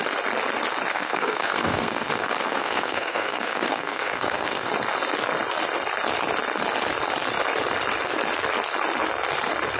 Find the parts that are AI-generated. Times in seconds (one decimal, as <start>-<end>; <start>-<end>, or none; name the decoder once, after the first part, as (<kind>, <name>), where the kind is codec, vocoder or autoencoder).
0.9-4.7 (codec, SNAC)